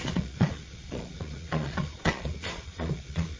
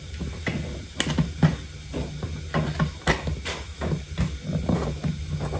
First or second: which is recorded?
second